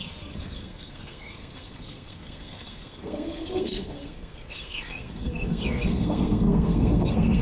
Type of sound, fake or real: fake